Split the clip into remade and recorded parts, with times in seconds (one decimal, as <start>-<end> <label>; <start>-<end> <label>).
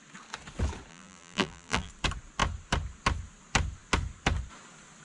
0.0-0.9 recorded; 0.9-1.9 remade; 1.9-5.0 recorded